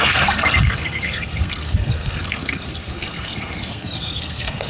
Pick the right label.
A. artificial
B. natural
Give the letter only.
A